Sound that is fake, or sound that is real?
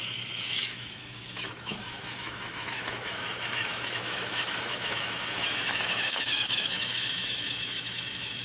fake